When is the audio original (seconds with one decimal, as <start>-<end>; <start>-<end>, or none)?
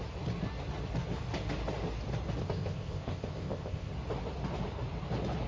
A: 0.0-2.4; 3.9-5.5